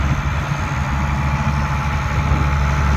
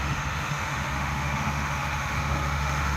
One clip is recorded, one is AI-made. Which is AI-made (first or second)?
second